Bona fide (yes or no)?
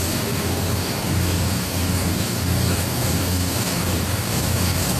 no